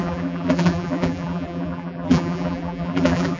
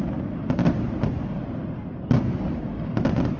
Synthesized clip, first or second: first